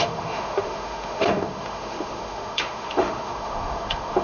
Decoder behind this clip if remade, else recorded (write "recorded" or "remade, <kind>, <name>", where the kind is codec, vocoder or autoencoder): remade, autoencoder, DAC-VAE